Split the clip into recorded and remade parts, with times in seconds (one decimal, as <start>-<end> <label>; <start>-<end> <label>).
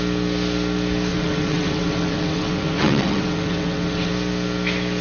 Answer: 0.0-1.1 recorded; 1.1-4.1 remade; 4.1-5.0 recorded